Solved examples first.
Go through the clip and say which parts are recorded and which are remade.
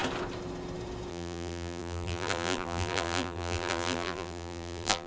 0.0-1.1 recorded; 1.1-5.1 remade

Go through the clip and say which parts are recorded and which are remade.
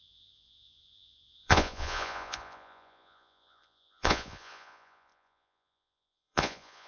0.0-6.9 remade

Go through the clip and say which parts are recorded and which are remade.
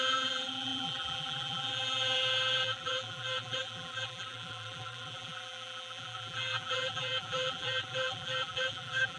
0.0-9.2 remade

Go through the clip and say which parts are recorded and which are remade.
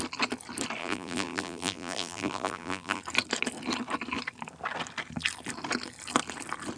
0.0-0.8 recorded; 0.8-3.0 remade; 3.0-6.8 recorded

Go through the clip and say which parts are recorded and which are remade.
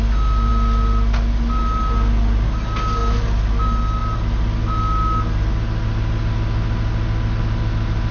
0.0-8.1 recorded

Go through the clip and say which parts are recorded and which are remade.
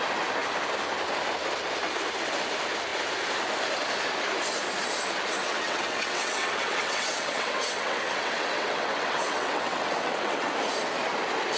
0.0-5.4 recorded; 5.4-10.5 remade; 10.5-11.6 recorded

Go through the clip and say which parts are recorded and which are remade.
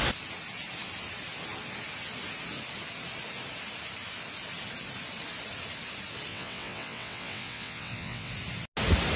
0.0-6.3 recorded; 6.3-8.3 remade; 8.3-9.2 recorded